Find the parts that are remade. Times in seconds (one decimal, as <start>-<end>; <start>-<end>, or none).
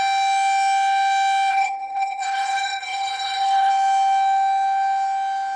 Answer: 1.5-3.7